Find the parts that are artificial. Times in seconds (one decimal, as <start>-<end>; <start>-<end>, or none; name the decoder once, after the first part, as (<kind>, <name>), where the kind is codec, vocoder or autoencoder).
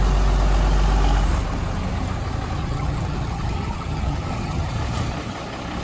2.6-4.7 (vocoder, HiFi-GAN)